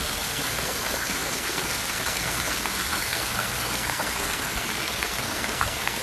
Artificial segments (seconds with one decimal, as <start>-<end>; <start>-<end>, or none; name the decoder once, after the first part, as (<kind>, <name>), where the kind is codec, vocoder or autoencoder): 0.0-6.0 (codec, SNAC)